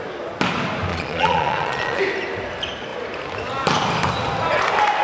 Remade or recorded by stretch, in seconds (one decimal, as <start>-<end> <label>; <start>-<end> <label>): 0.0-0.9 recorded; 0.9-2.0 remade; 2.0-5.0 recorded